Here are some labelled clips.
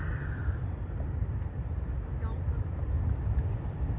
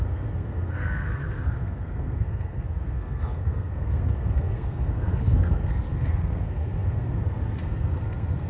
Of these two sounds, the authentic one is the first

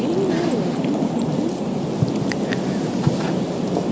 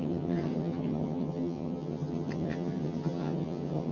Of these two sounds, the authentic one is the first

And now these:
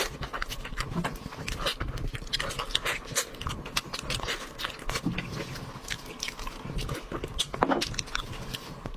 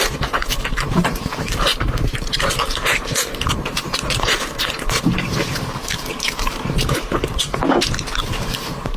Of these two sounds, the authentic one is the first